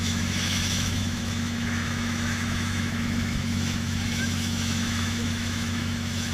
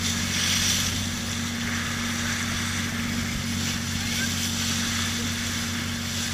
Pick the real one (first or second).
second